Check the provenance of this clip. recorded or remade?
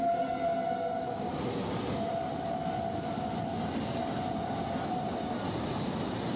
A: recorded